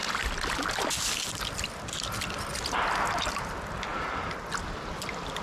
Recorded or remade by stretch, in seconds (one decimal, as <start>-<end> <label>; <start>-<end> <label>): 0.0-5.4 recorded